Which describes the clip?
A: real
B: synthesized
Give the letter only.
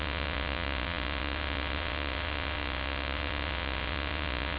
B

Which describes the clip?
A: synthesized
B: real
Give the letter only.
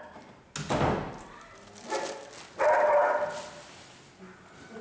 B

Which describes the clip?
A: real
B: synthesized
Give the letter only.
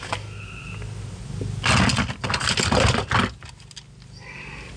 A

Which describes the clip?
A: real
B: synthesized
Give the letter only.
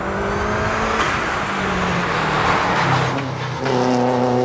A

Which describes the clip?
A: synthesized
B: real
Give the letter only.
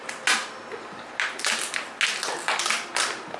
B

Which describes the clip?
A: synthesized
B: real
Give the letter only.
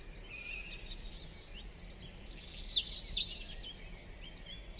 B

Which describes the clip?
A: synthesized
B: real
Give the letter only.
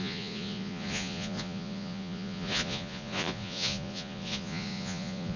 A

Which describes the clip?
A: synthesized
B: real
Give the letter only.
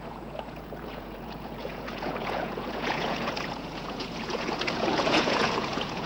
A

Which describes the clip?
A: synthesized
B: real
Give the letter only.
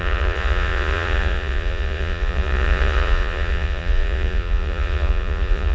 A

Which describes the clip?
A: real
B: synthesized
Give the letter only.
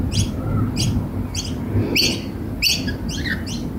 A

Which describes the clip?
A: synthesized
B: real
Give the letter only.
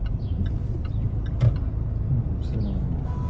B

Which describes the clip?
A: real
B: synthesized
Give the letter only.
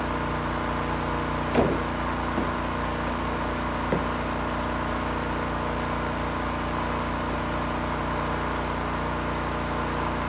A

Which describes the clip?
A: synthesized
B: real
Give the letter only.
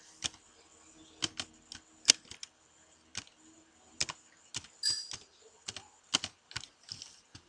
B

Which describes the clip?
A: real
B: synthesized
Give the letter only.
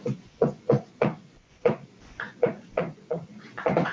B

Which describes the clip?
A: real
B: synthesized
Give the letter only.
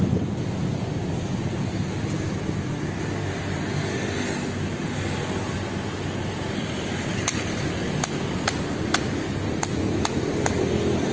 A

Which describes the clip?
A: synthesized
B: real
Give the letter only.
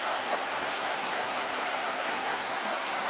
A